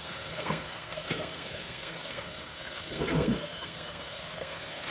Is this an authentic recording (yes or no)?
no